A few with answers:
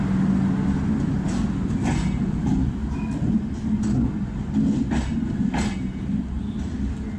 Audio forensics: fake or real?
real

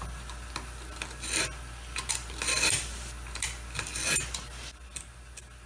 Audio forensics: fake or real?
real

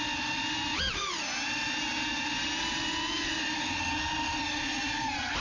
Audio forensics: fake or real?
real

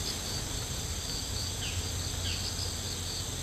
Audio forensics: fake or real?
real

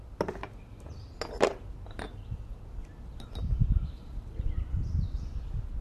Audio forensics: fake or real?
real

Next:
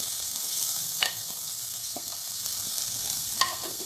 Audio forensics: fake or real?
fake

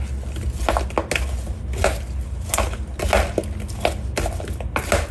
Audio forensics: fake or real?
real